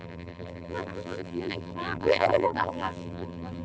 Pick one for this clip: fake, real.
fake